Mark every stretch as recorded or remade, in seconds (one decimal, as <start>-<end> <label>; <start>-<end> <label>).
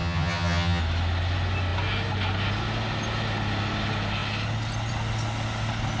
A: 0.0-0.8 remade; 0.8-6.0 recorded